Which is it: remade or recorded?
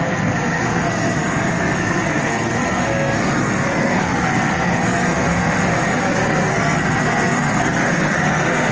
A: remade